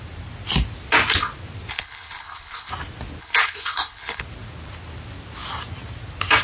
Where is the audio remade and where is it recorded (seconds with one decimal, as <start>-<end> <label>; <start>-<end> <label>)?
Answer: 0.0-1.7 recorded; 1.7-2.7 remade; 2.7-3.2 recorded; 3.2-4.2 remade; 4.2-6.4 recorded